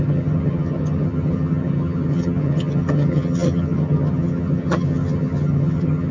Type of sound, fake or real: fake